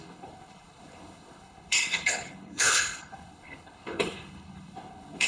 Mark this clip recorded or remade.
remade